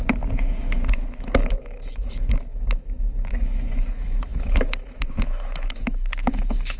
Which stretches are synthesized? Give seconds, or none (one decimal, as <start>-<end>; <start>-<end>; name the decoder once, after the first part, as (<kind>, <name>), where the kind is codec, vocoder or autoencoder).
0.0-6.8 (autoencoder, DAC-VAE)